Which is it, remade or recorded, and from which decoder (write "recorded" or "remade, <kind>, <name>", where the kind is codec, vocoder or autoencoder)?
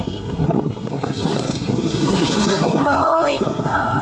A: remade, codec, SNAC